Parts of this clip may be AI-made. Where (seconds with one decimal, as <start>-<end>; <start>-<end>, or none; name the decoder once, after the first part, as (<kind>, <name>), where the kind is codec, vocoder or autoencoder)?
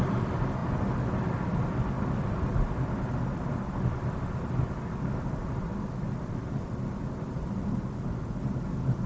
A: none